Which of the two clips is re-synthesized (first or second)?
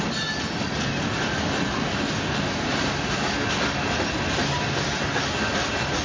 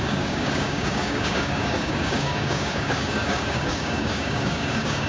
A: second